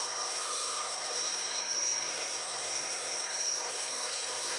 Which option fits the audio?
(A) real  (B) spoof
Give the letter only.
B